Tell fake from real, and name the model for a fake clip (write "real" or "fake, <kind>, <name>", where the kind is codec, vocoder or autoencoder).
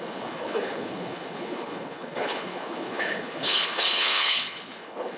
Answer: fake, codec, HILCodec